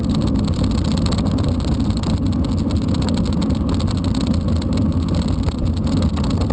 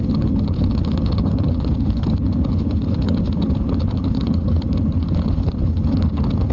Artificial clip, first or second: second